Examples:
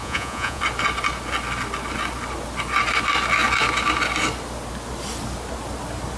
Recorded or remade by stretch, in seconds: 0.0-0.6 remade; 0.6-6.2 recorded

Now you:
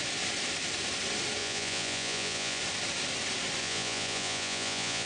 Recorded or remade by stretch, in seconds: 0.0-1.4 recorded; 1.4-2.6 remade; 2.6-3.6 recorded; 3.6-5.1 remade

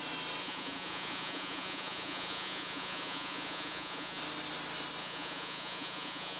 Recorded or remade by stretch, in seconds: 0.0-0.4 recorded; 0.4-4.2 remade; 4.2-5.0 recorded; 5.0-6.4 remade

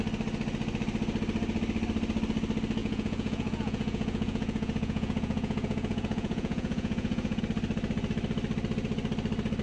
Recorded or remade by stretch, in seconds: 0.0-2.8 recorded; 2.8-7.4 remade; 7.4-9.6 recorded

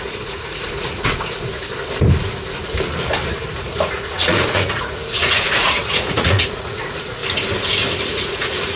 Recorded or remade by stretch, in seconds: 0.0-1.5 remade; 1.5-3.5 recorded; 3.5-7.2 remade; 7.2-8.0 recorded; 8.0-8.8 remade